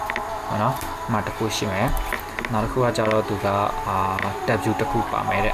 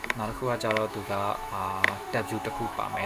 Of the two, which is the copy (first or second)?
second